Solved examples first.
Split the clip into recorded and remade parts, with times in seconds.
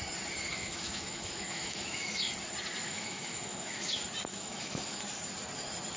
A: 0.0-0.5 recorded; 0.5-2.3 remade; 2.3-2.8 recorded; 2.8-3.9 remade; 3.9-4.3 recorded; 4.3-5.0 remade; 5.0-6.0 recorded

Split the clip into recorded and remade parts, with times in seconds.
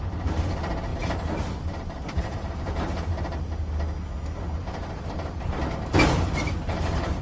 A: 0.0-7.2 recorded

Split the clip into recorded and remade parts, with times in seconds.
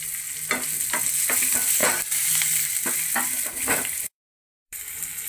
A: 0.0-1.8 recorded; 1.8-5.3 remade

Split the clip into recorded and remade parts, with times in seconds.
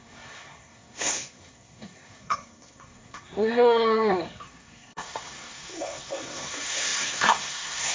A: 0.0-7.9 remade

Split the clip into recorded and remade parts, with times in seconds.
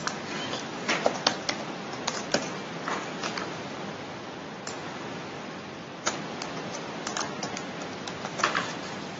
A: 0.0-2.5 remade; 2.5-4.2 recorded; 4.2-9.2 remade